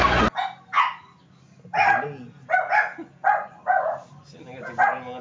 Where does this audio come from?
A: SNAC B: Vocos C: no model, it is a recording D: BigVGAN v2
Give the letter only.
C